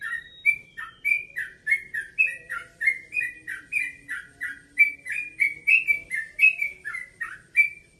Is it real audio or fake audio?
real